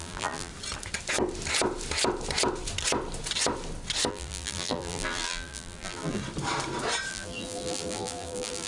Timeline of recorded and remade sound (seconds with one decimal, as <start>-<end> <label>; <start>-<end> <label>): 0.0-0.5 remade; 0.5-4.1 recorded; 4.1-6.2 remade; 6.2-7.1 recorded; 7.1-8.7 remade